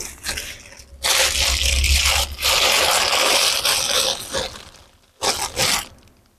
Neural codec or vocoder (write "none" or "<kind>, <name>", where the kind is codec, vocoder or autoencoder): none